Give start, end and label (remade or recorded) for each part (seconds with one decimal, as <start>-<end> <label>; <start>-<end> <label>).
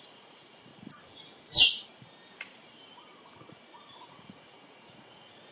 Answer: 0.0-0.7 remade; 0.7-4.0 recorded; 4.0-5.5 remade